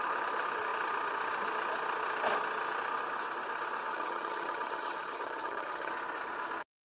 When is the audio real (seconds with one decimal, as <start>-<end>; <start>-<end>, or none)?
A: 0.0-3.9; 5.9-6.8